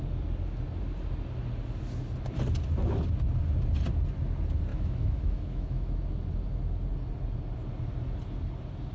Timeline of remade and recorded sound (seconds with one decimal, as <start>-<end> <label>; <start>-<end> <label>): 0.0-4.7 recorded; 4.7-5.9 remade; 5.9-8.9 recorded